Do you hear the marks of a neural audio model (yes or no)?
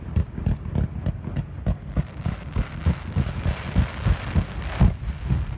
no